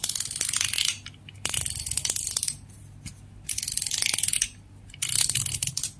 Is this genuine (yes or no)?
yes